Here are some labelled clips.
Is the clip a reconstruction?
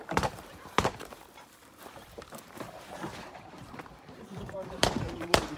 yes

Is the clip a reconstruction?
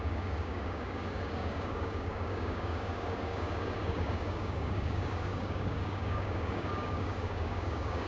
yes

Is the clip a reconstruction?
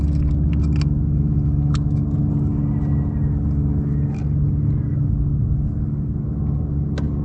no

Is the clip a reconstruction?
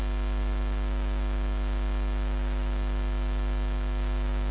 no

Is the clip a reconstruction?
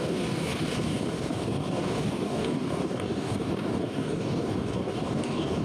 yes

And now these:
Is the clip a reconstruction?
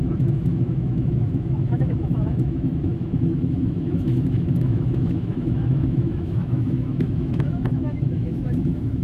yes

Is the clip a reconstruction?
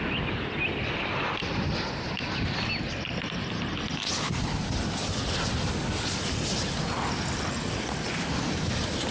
no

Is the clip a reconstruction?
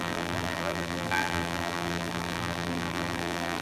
yes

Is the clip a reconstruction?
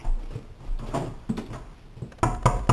no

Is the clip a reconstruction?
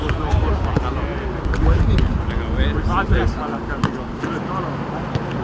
no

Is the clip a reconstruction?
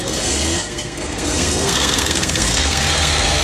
yes